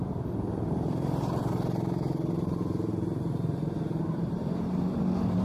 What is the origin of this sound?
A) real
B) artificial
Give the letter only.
B